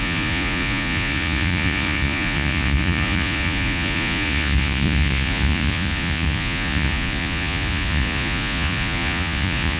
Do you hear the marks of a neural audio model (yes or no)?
yes